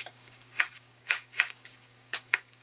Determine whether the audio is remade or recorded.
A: remade